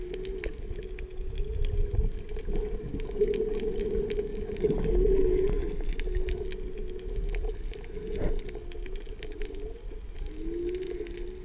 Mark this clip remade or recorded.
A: recorded